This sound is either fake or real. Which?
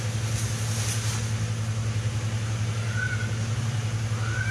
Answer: real